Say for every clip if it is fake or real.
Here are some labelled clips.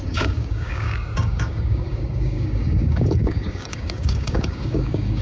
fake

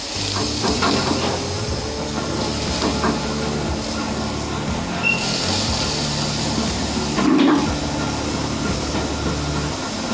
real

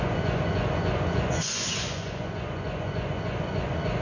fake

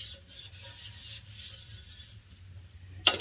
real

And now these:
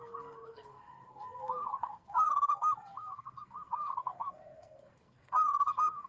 fake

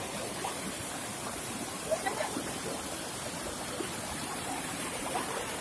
fake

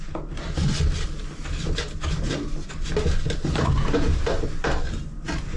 real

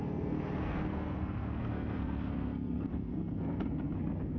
fake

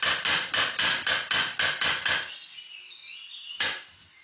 real